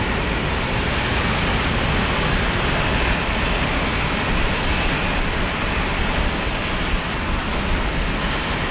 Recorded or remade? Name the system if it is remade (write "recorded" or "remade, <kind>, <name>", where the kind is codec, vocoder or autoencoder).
recorded